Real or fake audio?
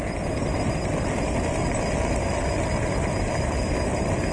real